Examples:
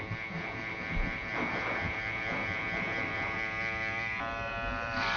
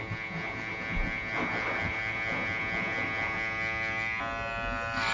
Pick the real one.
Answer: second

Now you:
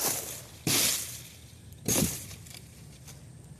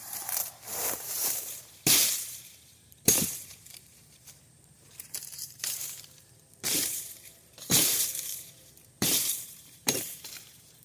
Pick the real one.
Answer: first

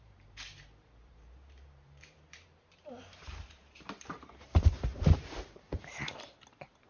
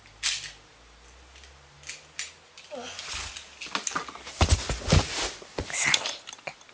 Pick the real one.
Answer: second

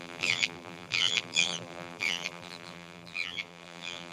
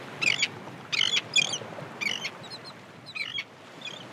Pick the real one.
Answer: second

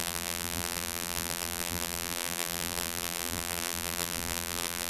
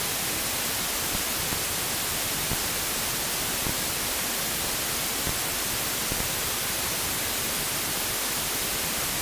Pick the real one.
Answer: second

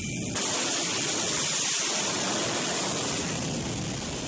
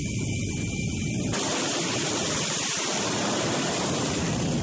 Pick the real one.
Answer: first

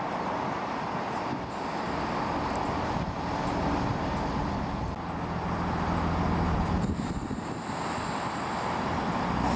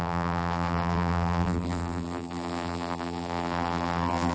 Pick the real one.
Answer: first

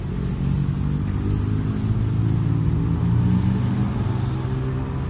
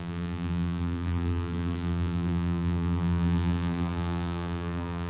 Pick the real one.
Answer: first